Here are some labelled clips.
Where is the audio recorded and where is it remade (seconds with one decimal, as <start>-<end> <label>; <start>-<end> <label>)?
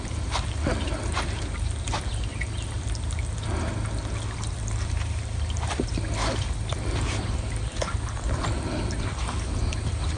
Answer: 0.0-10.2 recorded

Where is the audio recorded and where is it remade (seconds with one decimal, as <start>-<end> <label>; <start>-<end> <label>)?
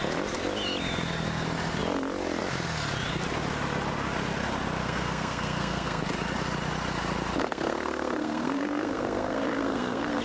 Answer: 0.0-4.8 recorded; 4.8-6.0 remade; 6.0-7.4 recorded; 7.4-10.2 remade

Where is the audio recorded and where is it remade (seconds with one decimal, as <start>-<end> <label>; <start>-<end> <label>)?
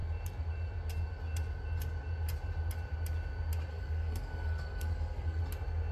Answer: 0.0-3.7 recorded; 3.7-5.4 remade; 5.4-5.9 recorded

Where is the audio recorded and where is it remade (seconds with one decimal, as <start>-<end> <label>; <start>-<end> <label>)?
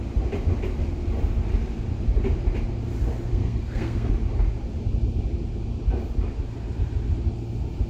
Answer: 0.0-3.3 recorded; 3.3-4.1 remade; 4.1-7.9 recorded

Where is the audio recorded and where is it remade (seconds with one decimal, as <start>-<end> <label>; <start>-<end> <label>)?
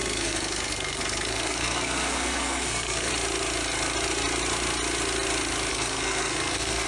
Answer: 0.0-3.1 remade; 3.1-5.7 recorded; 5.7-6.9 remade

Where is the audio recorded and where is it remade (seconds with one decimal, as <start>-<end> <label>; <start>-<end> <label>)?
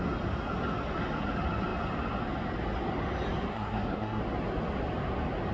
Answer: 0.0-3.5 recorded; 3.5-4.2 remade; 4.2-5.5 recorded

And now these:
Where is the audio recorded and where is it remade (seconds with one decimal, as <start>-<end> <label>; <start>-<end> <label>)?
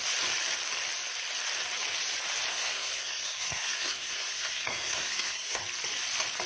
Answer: 0.0-2.5 recorded; 2.5-5.6 remade; 5.6-6.5 recorded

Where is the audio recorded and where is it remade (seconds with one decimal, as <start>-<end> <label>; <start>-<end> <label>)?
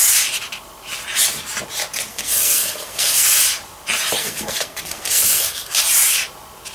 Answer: 0.0-2.1 recorded; 2.1-3.4 remade; 3.4-4.2 recorded; 4.2-5.8 remade; 5.8-6.7 recorded